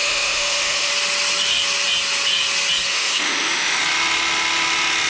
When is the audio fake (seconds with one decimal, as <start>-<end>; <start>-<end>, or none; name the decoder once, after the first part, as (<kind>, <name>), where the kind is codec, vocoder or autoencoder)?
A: 0.0-0.9 (autoencoder, DAC-VAE); 2.9-3.8